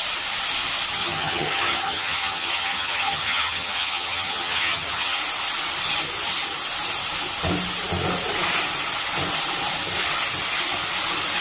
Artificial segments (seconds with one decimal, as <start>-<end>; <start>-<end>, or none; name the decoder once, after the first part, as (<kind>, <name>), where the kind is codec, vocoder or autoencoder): 1.0-5.2 (vocoder, HiFi-GAN)